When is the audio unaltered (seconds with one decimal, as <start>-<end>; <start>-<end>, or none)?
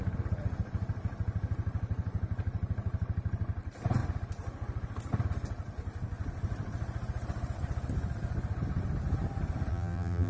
0.0-9.7